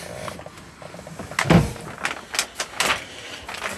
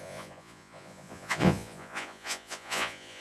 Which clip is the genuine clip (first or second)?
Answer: first